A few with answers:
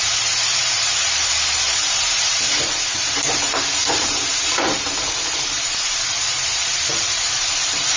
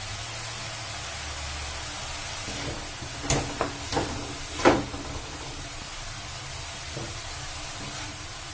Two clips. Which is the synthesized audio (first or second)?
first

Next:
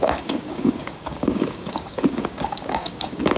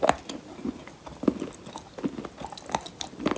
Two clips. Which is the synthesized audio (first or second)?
first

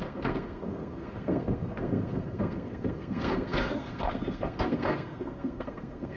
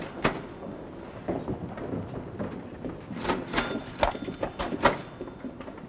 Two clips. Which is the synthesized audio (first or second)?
first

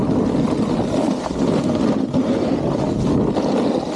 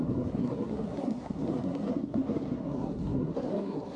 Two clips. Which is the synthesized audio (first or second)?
second